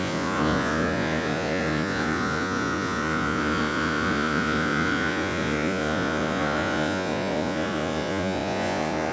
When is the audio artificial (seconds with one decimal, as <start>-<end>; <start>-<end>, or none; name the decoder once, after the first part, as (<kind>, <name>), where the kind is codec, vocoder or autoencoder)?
0.0-9.1 (vocoder, Vocos)